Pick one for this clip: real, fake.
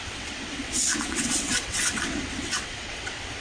fake